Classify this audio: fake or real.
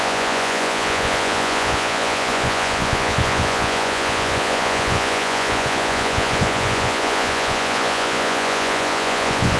fake